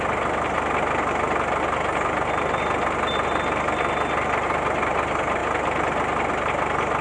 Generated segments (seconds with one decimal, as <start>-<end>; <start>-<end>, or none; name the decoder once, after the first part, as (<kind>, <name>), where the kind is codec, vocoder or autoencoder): none